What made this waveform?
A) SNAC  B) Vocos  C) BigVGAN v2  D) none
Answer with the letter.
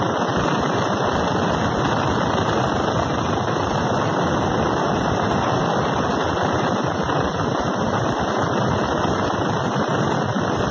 D